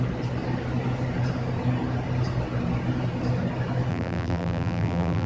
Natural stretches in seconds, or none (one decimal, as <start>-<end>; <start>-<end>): 0.0-3.9